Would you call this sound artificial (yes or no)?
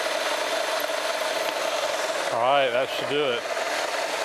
no